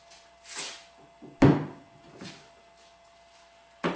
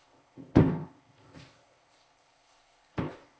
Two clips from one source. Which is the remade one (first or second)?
second